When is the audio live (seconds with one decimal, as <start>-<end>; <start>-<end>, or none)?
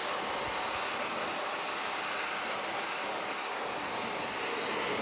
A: 0.0-5.0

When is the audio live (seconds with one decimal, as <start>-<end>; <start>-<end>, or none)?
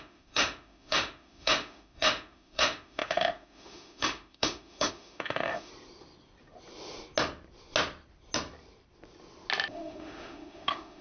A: 5.7-9.7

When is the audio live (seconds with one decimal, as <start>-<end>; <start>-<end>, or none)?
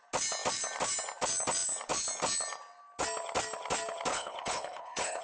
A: 0.0-4.1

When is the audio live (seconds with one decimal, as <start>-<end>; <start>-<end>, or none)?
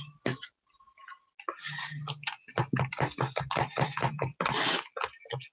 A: 0.0-5.5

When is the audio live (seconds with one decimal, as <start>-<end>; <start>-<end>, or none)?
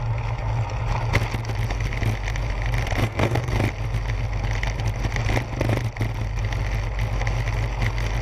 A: 0.0-3.0; 3.6-8.2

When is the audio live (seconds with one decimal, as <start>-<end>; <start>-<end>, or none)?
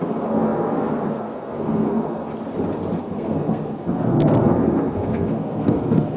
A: 2.3-3.0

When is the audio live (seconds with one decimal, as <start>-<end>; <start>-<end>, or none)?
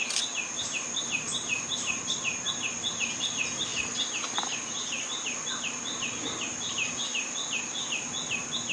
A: 0.0-8.7